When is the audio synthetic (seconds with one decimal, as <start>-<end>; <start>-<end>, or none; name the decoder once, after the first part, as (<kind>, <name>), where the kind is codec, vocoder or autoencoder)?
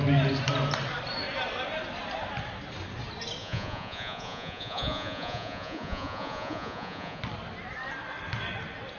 3.4-7.2 (vocoder, Vocos)